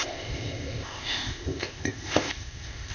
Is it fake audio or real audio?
fake